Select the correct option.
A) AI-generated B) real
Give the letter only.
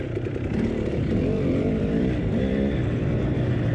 A